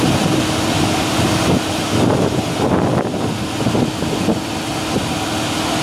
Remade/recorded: recorded